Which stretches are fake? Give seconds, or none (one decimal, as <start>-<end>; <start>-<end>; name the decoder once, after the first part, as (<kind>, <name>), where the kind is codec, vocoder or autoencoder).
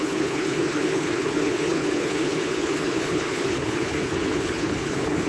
0.0-5.3 (codec, HILCodec)